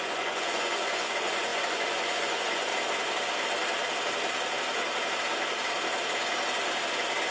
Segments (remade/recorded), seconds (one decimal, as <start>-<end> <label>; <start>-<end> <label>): 0.0-2.7 remade; 2.7-7.3 recorded